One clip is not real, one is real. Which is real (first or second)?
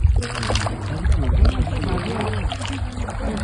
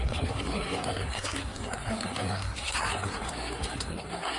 first